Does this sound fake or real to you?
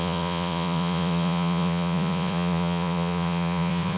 fake